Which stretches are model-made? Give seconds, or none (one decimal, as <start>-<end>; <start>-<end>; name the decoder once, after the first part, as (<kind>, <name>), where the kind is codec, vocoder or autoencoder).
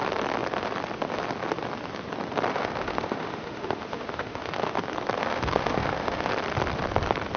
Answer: 2.5-4.8 (autoencoder, DAC-VAE); 5.2-6.3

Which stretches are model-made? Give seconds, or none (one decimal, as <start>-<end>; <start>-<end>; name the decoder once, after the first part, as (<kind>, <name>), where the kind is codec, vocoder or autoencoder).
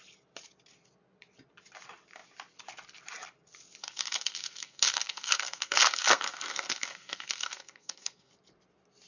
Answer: 3.8-8.3 (codec, SNAC)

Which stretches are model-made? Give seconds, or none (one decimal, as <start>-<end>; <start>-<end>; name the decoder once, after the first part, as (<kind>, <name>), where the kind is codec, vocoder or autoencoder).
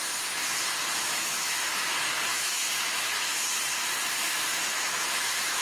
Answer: 1.1-1.9 (autoencoder, DAC-VAE); 2.3-3.6; 4.2-5.6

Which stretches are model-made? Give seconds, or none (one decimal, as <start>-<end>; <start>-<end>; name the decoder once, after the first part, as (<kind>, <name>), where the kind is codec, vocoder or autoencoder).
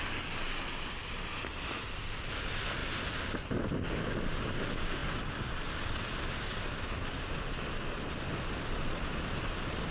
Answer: none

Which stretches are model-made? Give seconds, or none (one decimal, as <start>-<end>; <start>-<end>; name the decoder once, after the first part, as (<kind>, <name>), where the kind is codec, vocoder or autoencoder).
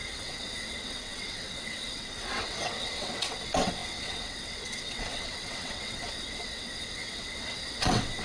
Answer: 0.0-8.2 (vocoder, WaveNeXt)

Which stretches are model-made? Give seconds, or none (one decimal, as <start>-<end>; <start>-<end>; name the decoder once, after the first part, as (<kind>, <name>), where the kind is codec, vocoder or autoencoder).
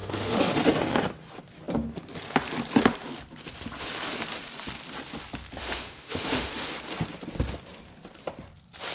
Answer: 0.0-0.5 (autoencoder, DAC-VAE); 5.6-6.5